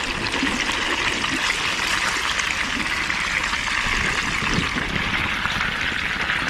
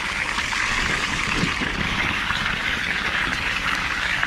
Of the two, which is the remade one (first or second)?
second